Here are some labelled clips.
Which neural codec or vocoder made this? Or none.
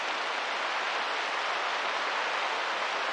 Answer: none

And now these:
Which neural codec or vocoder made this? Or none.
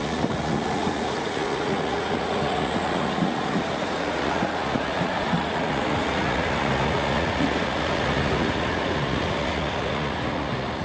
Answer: vocoder, Vocos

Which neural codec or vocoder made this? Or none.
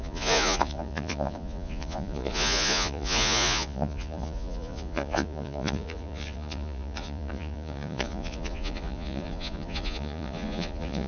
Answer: vocoder, Vocos